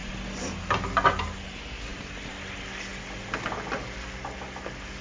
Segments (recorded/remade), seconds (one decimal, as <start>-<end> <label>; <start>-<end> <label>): 0.0-5.0 recorded